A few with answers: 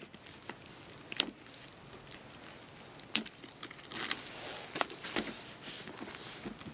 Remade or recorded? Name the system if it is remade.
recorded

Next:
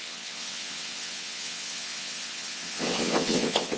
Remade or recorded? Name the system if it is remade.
remade, vocoder, WaveNeXt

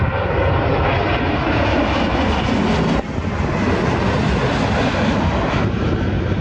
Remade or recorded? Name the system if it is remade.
recorded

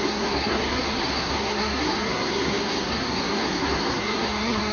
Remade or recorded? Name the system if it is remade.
remade, codec, SNAC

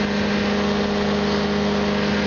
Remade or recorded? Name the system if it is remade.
recorded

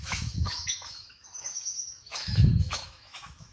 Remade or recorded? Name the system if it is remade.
remade, autoencoder, DAC-VAE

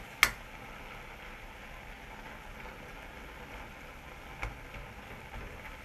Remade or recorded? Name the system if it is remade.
recorded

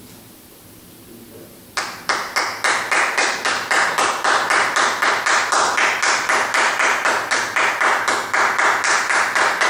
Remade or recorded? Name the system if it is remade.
recorded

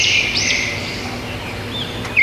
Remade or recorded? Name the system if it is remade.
recorded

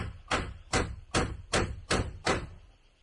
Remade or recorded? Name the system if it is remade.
recorded